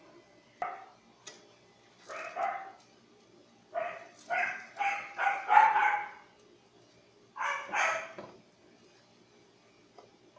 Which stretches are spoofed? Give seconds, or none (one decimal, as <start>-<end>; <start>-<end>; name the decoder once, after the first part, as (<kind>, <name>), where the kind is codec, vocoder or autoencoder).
none